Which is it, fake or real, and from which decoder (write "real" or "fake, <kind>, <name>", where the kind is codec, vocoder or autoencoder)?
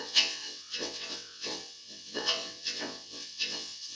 fake, vocoder, WaveNeXt